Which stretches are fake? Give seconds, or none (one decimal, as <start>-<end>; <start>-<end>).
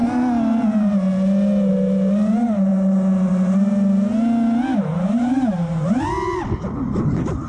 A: 4.7-6.0